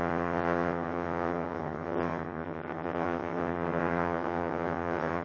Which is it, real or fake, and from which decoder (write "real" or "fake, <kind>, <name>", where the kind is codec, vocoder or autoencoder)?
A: fake, vocoder, HiFi-GAN